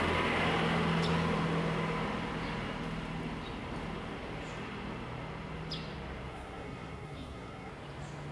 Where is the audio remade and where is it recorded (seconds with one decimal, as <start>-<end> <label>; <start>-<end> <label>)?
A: 0.0-6.3 recorded; 6.3-7.7 remade; 7.7-8.3 recorded